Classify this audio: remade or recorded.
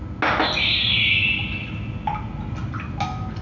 recorded